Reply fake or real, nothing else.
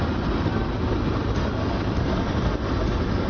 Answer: real